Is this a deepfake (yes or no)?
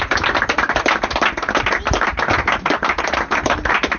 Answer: no